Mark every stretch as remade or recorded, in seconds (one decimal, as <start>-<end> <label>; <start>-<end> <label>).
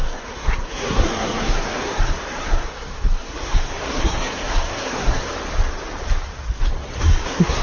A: 0.0-5.3 remade; 5.3-7.0 recorded; 7.0-7.6 remade